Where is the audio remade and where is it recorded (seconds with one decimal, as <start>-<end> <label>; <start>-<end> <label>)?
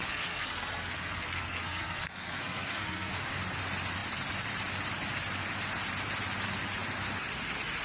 0.0-3.1 remade; 3.1-7.8 recorded